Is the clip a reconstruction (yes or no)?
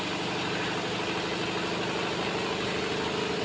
no